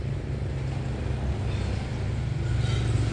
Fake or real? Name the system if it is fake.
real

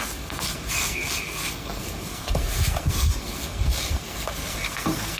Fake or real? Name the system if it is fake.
fake, codec, SNAC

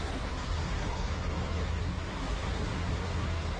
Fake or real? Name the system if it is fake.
fake, codec, SNAC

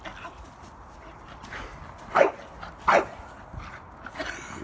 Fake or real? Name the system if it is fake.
real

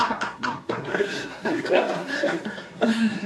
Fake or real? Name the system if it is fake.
fake, codec, SNAC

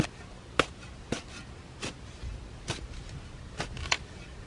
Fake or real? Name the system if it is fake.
real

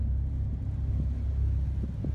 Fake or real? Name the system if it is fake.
real